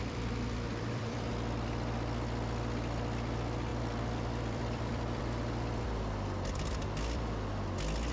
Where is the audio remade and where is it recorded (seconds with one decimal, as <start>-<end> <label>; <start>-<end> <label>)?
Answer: 0.0-1.3 remade; 1.3-3.7 recorded; 3.7-5.2 remade; 5.2-8.1 recorded

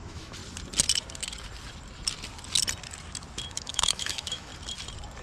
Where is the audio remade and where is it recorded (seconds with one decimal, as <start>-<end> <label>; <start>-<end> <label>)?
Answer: 0.0-0.4 remade; 0.4-3.5 recorded; 3.5-4.5 remade; 4.5-5.2 recorded

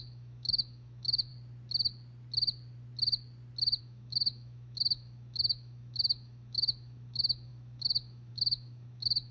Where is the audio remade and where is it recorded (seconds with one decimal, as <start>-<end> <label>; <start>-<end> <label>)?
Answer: 0.0-1.3 remade; 1.3-3.8 recorded; 3.8-9.3 remade

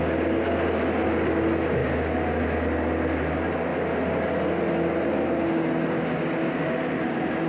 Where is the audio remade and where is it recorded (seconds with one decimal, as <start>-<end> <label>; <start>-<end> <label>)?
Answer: 0.0-7.5 recorded

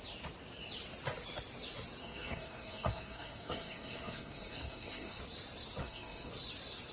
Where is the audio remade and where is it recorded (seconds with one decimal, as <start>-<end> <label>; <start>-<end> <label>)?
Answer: 0.0-2.0 recorded; 2.0-5.2 remade; 5.2-5.8 recorded; 5.8-6.3 remade; 6.3-6.9 recorded

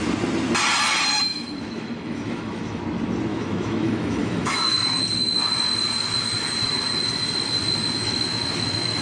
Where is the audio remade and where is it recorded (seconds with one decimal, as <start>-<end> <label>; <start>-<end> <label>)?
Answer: 0.0-1.3 recorded; 1.3-2.8 remade; 2.8-3.3 recorded; 3.3-5.0 remade; 5.0-8.0 recorded; 8.0-9.0 remade

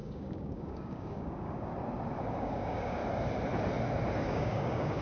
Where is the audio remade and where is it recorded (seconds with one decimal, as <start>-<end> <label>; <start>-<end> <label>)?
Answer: 0.0-1.7 remade; 1.7-2.4 recorded; 2.4-3.0 remade; 3.0-4.3 recorded; 4.3-5.0 remade

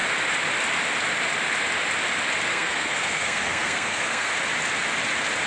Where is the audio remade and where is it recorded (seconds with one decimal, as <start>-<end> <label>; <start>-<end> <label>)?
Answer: 0.0-2.5 recorded; 2.5-4.3 remade; 4.3-5.5 recorded